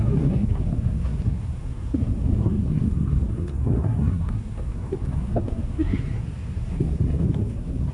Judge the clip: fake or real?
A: fake